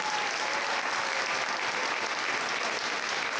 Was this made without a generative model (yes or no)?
yes